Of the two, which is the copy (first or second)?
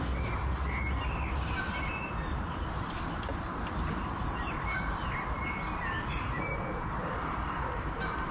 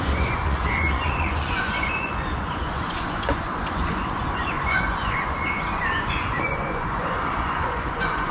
second